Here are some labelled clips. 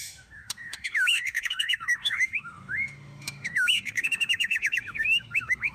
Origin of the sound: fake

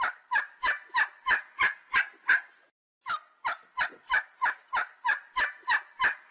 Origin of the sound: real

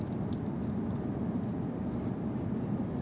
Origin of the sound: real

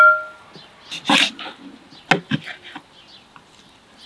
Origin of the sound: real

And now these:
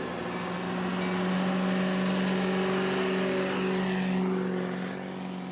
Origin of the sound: real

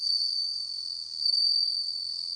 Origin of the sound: real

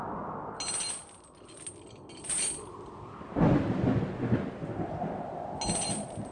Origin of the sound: real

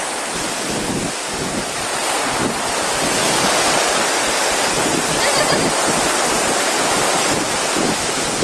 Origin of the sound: real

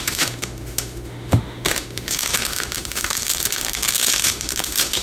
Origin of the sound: fake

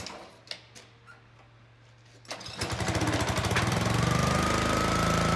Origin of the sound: real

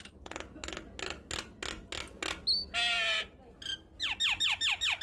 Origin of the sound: real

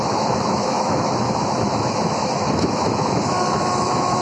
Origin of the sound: fake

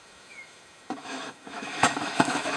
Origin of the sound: fake